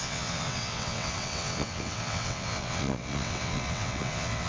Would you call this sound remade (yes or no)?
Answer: yes